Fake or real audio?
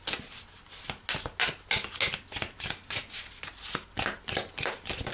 real